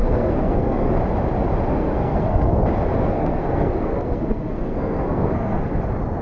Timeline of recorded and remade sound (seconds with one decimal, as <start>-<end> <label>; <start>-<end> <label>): 0.0-0.9 remade; 0.9-1.7 recorded; 1.7-2.6 remade; 2.6-3.0 recorded; 3.0-5.8 remade; 5.8-6.2 recorded